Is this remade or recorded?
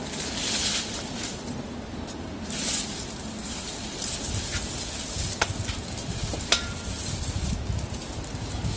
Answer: recorded